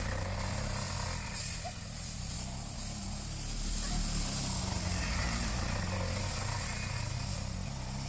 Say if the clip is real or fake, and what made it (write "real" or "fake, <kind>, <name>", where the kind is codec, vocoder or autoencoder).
real